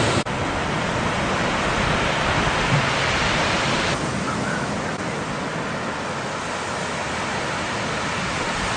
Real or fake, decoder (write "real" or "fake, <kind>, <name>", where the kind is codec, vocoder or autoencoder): real